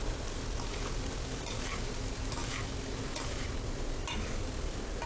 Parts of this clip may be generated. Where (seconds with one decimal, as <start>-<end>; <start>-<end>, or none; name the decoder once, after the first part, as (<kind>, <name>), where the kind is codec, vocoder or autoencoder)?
none